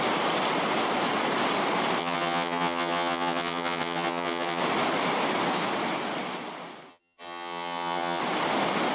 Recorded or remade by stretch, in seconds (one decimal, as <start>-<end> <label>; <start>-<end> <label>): 0.0-2.0 recorded; 2.0-4.6 remade; 4.6-6.9 recorded; 6.9-8.2 remade; 8.2-8.9 recorded